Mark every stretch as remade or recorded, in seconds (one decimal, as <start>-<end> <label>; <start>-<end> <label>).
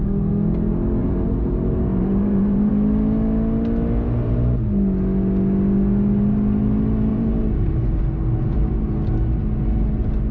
0.0-1.0 recorded; 1.0-2.7 remade; 2.7-7.1 recorded; 7.1-7.7 remade; 7.7-10.3 recorded